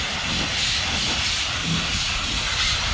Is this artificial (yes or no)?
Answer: no